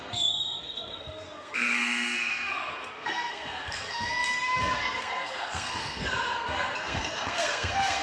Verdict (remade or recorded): remade